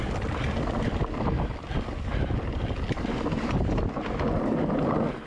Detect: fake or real real